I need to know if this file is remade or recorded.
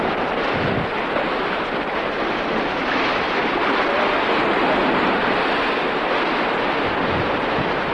remade